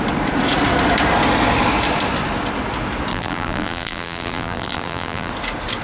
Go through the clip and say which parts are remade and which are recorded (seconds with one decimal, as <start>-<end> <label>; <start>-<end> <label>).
0.0-3.1 recorded; 3.1-5.3 remade; 5.3-5.8 recorded